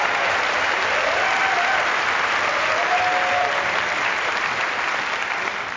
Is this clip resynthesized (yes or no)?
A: no